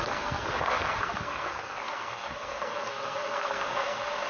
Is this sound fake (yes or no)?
yes